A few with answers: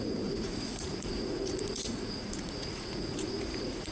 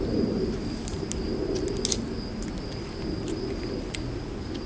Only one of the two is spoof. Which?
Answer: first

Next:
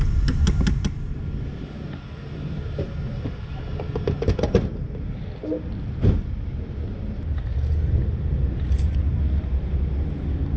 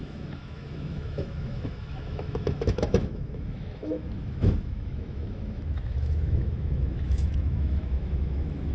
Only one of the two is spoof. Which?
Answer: second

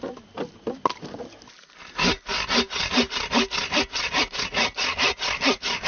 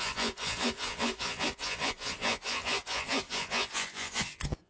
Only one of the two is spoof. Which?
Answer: second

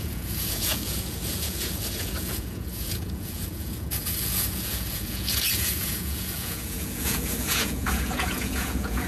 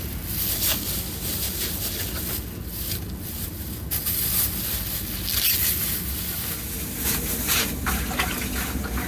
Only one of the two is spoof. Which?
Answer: first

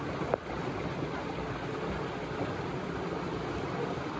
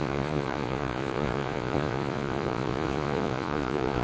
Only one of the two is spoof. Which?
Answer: second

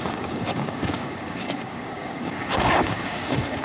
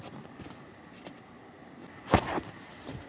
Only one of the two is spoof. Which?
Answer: first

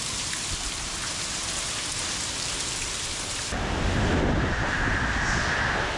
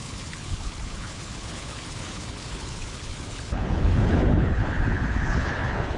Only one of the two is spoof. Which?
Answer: second